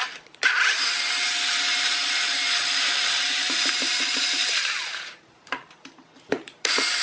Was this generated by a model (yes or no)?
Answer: yes